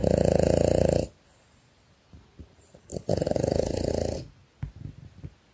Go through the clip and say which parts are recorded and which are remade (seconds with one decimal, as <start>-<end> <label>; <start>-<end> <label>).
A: 0.0-2.8 recorded; 2.8-3.9 remade; 3.9-5.5 recorded